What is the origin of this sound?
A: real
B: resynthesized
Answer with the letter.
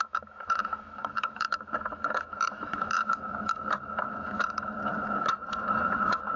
B